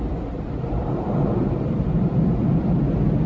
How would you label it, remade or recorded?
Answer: remade